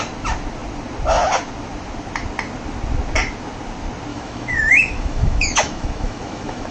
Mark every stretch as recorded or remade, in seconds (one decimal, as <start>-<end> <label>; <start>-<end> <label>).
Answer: 0.0-4.1 recorded; 4.1-6.7 remade